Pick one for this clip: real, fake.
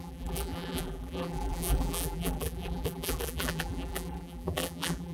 fake